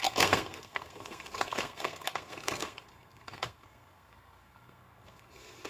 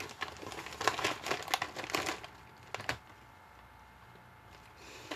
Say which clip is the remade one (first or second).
first